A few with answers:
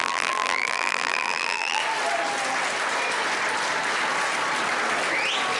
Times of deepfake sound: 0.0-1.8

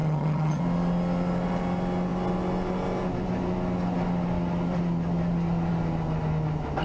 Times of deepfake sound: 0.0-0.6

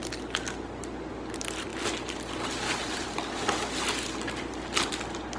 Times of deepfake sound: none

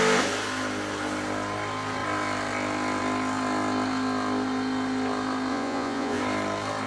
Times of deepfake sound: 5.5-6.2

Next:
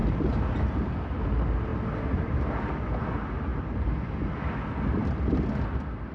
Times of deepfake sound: 0.0-0.9; 1.7-2.4; 3.5-4.1

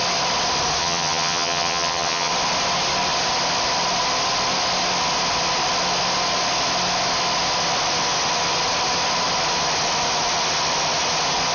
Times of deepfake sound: 0.8-2.3

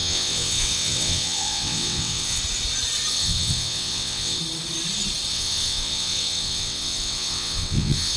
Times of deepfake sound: 0.0-2.4; 3.1-4.4; 5.3-8.2

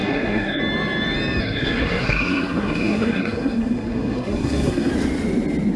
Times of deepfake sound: 0.0-0.6; 1.4-4.9